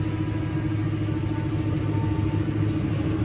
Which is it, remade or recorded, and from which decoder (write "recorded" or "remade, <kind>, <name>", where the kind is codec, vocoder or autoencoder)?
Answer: recorded